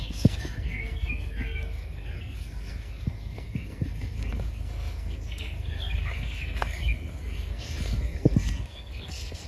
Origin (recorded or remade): remade